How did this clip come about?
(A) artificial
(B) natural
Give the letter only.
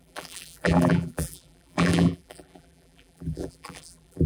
A